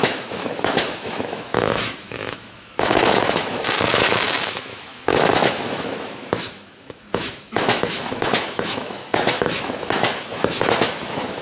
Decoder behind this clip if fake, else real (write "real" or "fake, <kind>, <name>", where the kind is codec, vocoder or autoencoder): fake, autoencoder, DAC-VAE